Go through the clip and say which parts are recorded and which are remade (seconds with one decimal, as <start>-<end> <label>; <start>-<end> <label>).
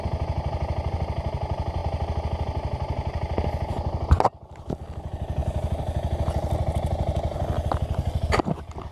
0.0-8.9 recorded